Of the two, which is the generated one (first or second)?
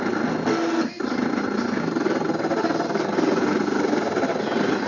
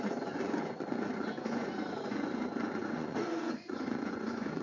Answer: second